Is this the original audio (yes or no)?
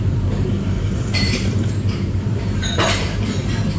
no